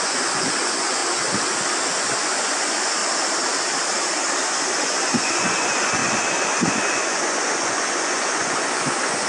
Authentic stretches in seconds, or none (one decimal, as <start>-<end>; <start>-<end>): 1.0-2.0; 3.0-4.5